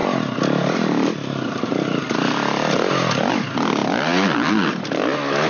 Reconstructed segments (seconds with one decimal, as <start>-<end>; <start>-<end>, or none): none